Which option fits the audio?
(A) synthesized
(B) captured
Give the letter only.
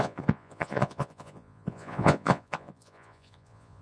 A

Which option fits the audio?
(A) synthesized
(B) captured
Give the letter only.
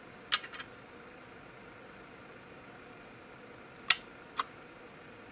B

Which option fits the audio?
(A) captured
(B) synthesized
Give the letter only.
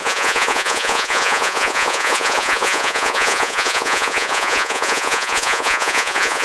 B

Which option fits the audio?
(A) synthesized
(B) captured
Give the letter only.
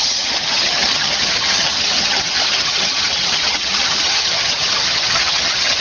A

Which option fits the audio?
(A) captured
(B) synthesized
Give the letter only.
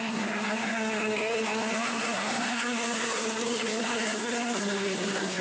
B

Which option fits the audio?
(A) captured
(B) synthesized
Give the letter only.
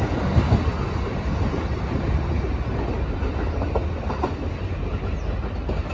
A